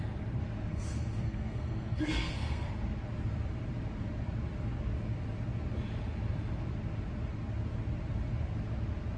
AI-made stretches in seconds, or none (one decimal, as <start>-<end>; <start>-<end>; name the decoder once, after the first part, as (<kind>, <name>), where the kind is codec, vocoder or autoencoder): 0.7-2.7 (codec, SNAC)